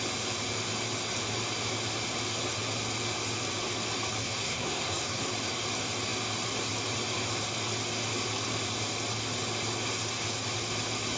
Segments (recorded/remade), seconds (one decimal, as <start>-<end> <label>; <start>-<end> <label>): 0.0-4.2 recorded; 4.2-5.3 remade; 5.3-11.2 recorded